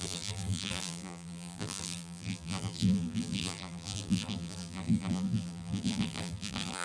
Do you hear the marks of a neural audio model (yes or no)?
yes